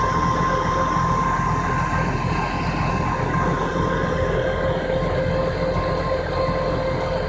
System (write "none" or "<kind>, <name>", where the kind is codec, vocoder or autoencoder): none